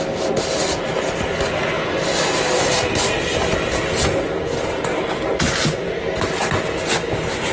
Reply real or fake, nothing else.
real